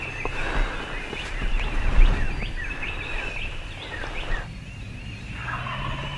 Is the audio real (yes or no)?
yes